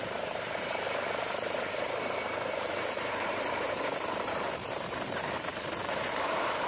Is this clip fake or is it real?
fake